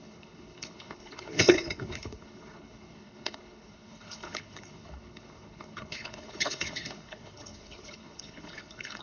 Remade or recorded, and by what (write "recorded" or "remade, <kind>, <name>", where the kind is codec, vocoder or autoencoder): remade, codec, HILCodec